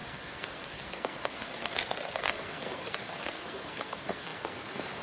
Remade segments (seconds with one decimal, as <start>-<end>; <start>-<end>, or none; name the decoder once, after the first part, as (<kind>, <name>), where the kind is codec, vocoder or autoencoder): 0.0-5.0 (codec, SNAC)